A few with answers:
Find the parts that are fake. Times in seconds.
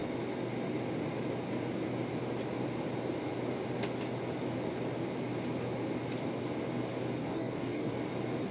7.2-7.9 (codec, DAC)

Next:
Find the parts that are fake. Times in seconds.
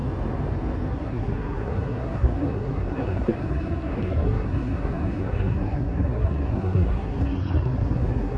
0.9-8.4 (codec, SNAC)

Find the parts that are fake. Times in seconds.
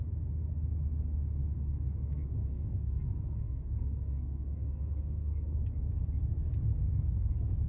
1.4-5.6 (codec, SNAC); 6.7-7.3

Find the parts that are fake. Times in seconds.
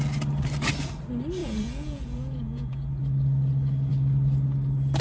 1.4-2.9 (vocoder, Vocos)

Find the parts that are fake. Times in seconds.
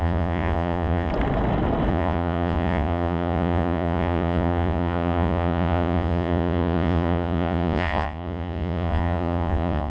0.0-1.1 (vocoder, Vocos); 1.9-9.9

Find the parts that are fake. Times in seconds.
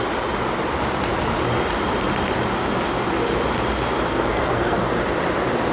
4.1-4.9 (codec, SNAC)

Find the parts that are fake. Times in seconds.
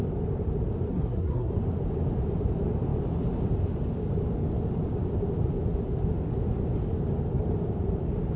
0.9-1.5 (codec, SNAC)